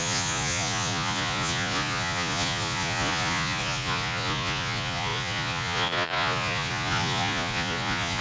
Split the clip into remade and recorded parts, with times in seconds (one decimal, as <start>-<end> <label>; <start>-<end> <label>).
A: 0.0-8.2 remade